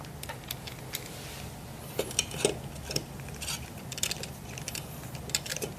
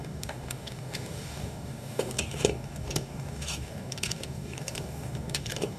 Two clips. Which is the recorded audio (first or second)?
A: first